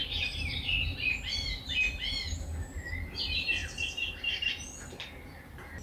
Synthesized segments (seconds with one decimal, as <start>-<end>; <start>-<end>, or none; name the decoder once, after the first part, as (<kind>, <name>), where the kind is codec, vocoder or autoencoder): 0.0-1.8 (vocoder, BigVGAN v2); 2.5-3.1; 3.6-4.5